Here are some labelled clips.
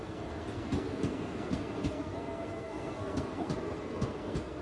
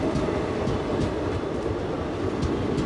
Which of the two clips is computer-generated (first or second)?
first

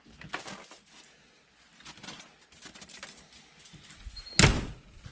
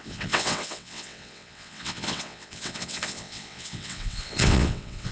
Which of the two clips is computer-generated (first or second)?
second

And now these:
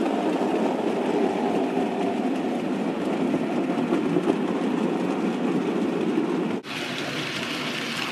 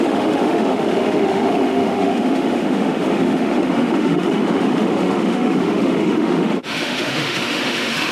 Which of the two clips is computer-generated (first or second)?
second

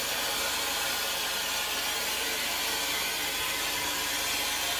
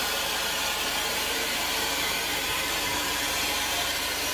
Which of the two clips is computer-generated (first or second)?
second